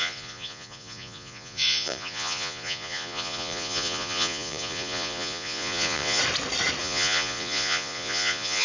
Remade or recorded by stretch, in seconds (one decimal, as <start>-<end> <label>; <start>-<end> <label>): 0.0-6.2 remade; 6.2-6.8 recorded; 6.8-8.6 remade